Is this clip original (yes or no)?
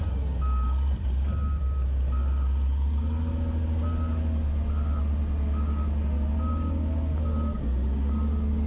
yes